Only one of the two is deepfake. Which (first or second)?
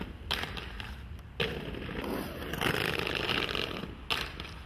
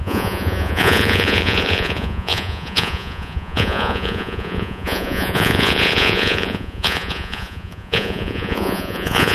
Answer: second